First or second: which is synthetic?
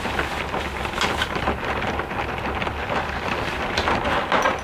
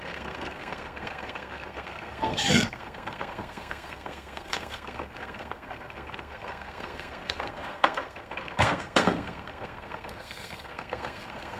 second